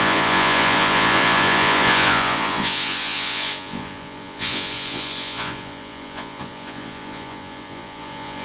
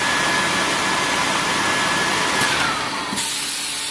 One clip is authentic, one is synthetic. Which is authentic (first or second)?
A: second